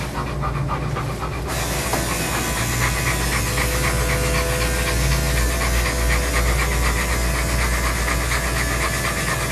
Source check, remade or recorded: recorded